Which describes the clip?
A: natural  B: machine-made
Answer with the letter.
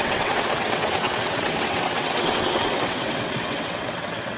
B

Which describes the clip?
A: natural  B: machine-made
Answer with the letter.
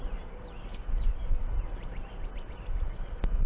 B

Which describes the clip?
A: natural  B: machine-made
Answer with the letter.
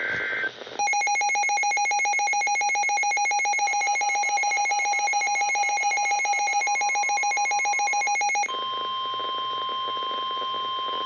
A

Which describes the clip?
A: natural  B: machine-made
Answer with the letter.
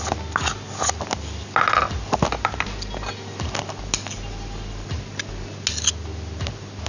A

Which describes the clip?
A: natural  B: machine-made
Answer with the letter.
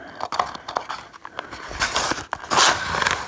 A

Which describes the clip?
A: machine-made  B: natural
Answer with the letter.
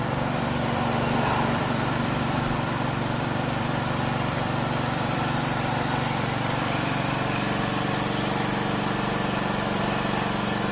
A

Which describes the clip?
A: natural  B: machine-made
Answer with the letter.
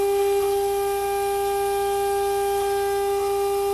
A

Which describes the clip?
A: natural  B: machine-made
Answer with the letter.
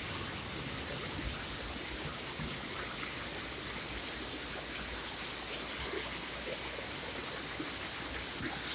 A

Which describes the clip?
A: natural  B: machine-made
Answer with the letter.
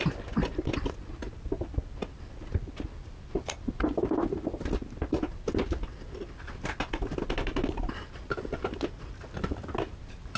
A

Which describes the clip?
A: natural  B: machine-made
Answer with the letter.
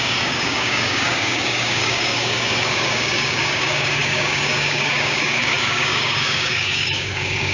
B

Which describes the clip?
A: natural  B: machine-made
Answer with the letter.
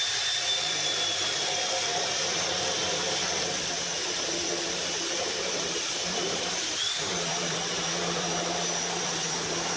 B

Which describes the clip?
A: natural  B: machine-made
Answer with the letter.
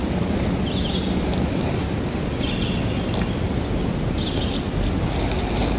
A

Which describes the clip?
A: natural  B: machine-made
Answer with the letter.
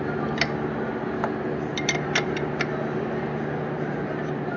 A